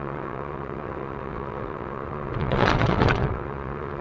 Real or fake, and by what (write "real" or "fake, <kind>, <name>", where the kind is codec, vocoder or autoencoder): fake, vocoder, WaveNeXt